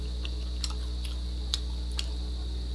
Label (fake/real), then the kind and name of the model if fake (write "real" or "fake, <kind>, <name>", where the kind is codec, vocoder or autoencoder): real